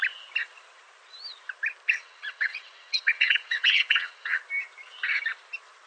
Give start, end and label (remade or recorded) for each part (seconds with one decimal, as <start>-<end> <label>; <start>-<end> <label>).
0.0-2.0 recorded; 2.0-4.4 remade; 4.4-5.9 recorded